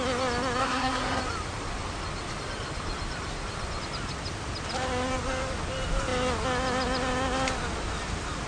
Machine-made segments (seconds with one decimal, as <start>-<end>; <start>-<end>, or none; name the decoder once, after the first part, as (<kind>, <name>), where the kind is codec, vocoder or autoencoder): 0.6-1.2 (codec, SNAC)